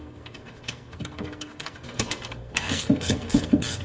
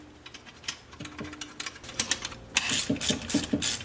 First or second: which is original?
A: second